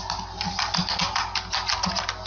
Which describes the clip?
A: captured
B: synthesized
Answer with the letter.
A